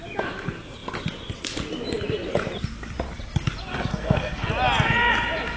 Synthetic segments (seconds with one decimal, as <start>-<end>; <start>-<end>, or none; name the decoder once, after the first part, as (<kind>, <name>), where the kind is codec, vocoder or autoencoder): 3.7-4.5 (codec, SNAC)